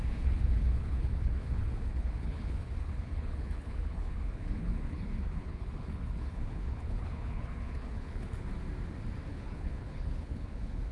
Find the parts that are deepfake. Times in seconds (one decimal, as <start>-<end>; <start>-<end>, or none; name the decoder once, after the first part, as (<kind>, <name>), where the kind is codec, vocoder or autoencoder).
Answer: 0.0-8.5 (codec, HILCodec); 9.3-10.9